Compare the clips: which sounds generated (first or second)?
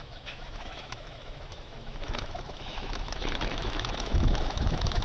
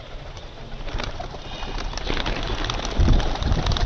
first